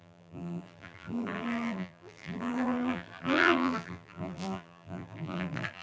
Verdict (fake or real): fake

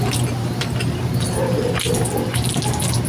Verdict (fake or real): real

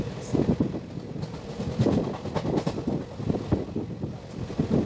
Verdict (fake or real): real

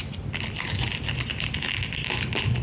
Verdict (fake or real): real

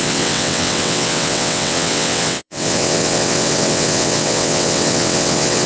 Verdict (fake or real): fake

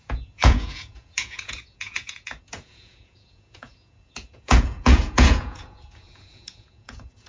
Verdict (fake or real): fake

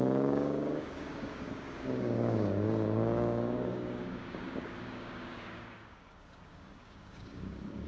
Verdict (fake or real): fake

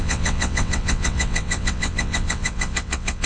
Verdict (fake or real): fake